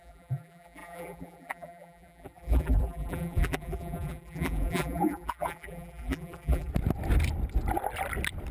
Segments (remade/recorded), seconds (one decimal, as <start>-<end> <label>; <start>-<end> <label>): 0.0-6.7 remade; 6.7-8.5 recorded